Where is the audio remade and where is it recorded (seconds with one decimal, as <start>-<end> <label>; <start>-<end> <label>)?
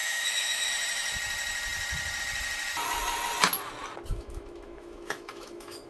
0.0-0.7 remade; 0.7-4.1 recorded; 4.1-5.9 remade